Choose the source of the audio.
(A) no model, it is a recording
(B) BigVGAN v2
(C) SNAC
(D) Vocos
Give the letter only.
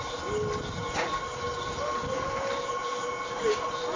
A